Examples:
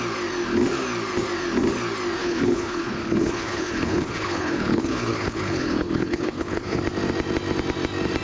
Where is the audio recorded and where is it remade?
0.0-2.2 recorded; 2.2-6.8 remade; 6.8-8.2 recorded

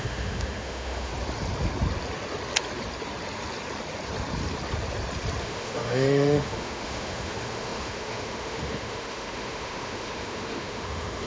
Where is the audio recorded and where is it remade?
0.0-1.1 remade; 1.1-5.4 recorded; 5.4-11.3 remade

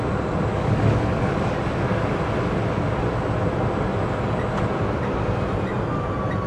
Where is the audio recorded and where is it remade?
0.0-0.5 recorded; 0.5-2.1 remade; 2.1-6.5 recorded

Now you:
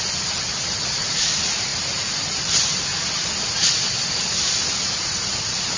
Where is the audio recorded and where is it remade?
0.0-5.8 recorded

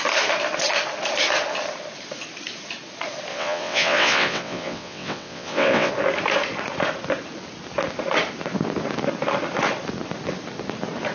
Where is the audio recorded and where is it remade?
0.0-3.3 recorded; 3.3-5.9 remade; 5.9-11.1 recorded